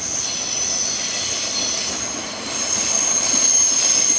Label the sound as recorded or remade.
recorded